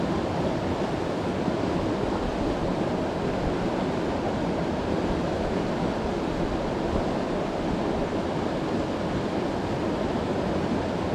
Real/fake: real